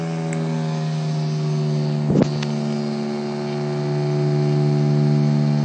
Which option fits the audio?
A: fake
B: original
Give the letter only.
B